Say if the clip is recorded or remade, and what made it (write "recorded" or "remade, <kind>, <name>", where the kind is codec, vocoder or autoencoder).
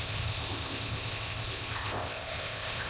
remade, codec, ZipCodec